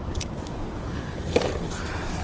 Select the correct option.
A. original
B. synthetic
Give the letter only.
A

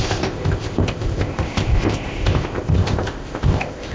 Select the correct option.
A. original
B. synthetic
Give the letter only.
B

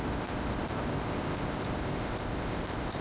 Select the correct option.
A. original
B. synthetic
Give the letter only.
B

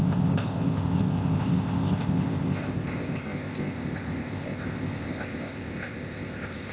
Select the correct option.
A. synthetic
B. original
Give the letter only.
A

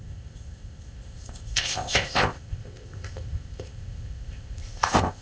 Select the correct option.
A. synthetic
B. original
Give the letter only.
A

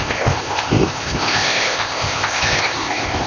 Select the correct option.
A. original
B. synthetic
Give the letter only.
B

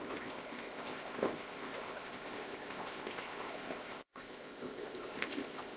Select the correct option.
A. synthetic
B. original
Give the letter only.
A